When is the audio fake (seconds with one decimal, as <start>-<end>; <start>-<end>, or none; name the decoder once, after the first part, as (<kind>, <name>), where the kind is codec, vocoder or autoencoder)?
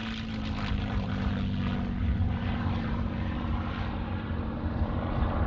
0.0-1.3 (vocoder, BigVGAN v2); 2.0-5.5